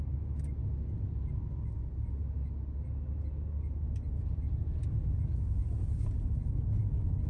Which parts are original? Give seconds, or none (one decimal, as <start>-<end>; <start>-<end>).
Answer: 0.0-7.3